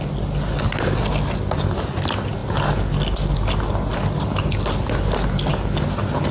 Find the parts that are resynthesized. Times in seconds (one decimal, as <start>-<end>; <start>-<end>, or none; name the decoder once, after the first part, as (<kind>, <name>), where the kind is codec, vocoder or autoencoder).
none